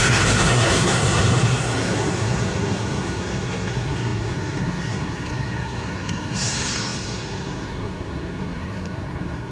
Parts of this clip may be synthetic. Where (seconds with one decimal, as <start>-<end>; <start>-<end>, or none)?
0.0-9.5